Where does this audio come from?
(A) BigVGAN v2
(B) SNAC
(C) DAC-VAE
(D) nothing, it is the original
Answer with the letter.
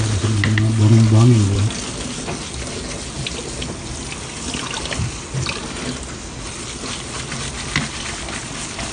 D